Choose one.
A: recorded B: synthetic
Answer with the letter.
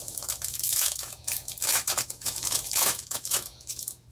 B